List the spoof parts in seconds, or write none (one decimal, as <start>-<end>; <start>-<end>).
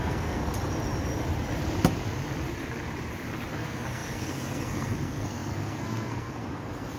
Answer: 0.0-0.4; 3.5-7.0